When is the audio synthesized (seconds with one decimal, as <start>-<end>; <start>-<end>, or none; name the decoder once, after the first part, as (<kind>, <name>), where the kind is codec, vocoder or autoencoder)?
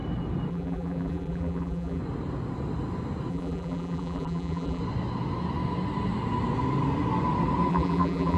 0.5-2.0 (vocoder, BigVGAN v2); 3.3-4.8; 7.7-8.4